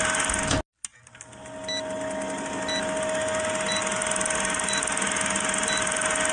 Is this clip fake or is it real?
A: real